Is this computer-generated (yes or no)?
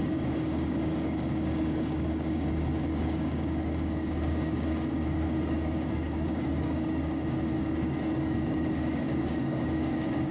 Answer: yes